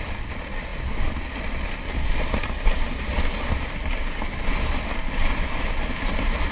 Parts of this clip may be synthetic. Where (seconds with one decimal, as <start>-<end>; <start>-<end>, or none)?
none

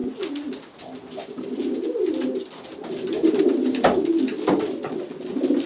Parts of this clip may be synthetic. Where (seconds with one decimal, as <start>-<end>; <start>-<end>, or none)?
none

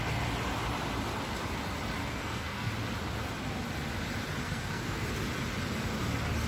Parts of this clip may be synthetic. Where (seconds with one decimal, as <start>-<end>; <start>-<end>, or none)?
2.0-2.7; 4.4-5.1

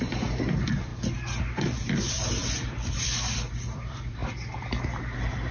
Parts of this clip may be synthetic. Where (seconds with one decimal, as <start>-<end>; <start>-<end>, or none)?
0.0-0.9; 2.0-5.5

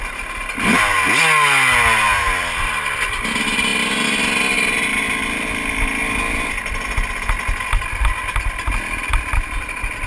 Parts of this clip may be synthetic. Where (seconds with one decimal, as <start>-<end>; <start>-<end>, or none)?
none

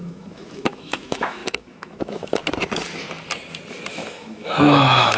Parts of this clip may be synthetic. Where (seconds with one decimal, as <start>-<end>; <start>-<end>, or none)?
0.0-2.4; 3.9-5.2

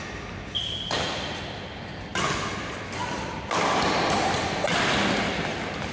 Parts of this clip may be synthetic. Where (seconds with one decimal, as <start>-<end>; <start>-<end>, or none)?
none

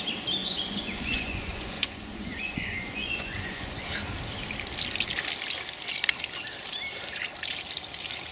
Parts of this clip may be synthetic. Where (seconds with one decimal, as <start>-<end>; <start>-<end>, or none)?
0.4-3.7